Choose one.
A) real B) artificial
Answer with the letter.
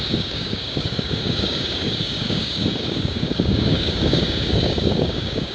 B